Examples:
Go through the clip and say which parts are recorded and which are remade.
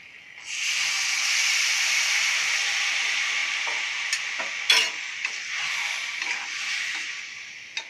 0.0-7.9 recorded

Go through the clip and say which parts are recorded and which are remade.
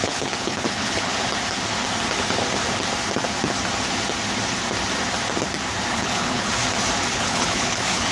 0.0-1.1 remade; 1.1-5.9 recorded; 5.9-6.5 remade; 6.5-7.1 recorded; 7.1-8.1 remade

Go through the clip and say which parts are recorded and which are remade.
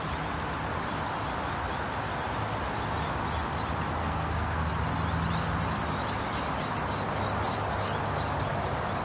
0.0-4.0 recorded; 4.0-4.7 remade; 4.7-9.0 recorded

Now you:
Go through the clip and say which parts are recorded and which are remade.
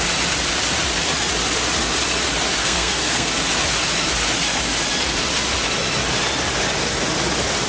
0.0-2.6 recorded; 2.6-3.3 remade; 3.3-7.7 recorded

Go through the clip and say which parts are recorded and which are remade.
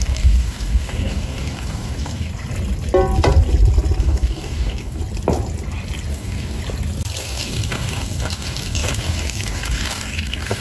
0.0-2.3 remade; 2.3-4.0 recorded; 4.0-5.0 remade; 5.0-6.1 recorded; 6.1-6.6 remade; 6.6-7.2 recorded; 7.2-10.6 remade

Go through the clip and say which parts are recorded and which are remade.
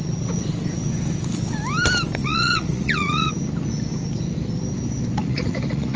0.0-2.2 recorded; 2.2-3.3 remade; 3.3-5.2 recorded; 5.2-6.0 remade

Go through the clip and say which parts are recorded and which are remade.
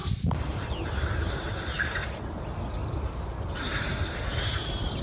0.0-1.5 remade; 1.5-2.8 recorded; 2.8-5.0 remade